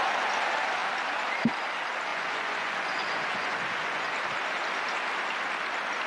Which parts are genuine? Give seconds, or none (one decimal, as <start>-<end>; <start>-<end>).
0.0-2.1; 4.1-6.1